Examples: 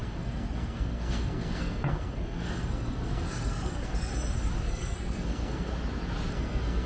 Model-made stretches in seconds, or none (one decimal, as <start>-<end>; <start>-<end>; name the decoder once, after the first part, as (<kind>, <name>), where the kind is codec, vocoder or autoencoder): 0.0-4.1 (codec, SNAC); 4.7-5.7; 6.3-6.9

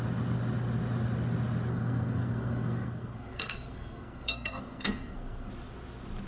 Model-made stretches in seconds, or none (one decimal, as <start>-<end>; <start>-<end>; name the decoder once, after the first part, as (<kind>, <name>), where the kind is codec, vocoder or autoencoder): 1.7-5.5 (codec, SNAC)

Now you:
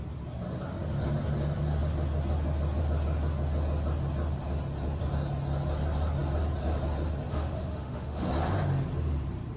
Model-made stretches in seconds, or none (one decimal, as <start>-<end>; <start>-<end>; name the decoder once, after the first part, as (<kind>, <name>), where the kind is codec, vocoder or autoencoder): 7.3-8.3 (autoencoder, DAC-VAE)